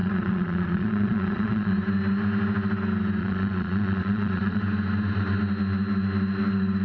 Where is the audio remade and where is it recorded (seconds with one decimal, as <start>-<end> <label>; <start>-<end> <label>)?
0.0-1.7 remade; 1.7-3.2 recorded; 3.2-4.6 remade; 4.6-6.8 recorded